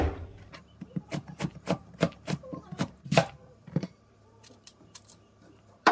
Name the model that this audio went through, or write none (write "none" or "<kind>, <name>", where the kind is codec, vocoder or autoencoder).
vocoder, BigVGAN v2